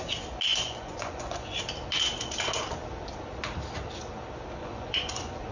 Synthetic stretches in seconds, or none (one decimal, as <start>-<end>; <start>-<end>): 0.5-1.6; 4.6-5.5